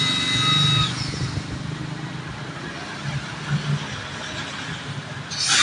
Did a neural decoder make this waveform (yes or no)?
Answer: no